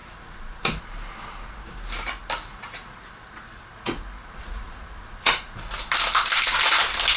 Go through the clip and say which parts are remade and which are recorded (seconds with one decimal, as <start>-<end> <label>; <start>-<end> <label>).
0.0-0.8 remade; 0.8-2.5 recorded; 2.5-3.0 remade; 3.0-3.7 recorded; 3.7-5.6 remade; 5.6-7.2 recorded